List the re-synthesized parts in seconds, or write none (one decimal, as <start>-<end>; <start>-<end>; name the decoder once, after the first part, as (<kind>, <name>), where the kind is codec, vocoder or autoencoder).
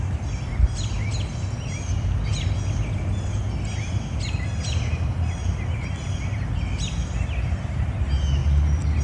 none